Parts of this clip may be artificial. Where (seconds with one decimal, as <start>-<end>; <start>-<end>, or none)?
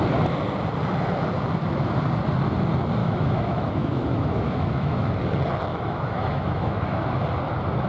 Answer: 3.0-5.1; 5.7-7.2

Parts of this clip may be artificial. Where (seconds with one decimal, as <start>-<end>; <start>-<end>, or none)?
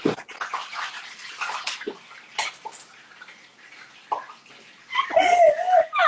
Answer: none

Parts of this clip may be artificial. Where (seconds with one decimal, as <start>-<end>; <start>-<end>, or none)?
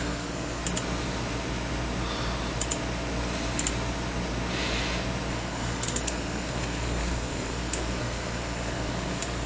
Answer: 0.0-0.6; 5.3-9.5